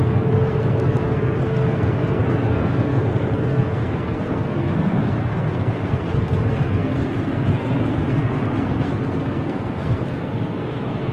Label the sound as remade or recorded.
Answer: remade